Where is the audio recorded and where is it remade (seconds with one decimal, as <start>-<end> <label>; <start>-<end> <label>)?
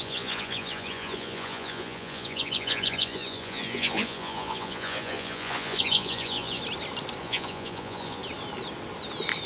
0.0-6.6 remade; 6.6-7.2 recorded; 7.2-8.2 remade; 8.2-9.5 recorded